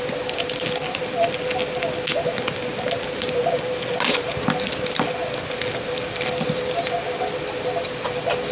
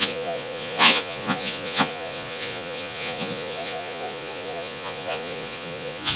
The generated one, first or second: second